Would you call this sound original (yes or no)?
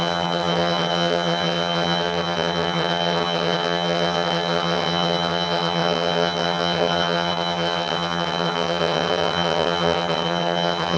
no